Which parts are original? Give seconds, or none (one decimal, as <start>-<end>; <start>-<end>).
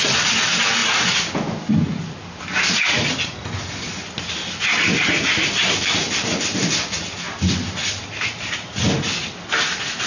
0.0-10.1